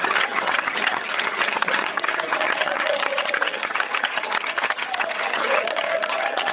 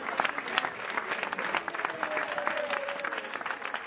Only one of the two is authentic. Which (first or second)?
second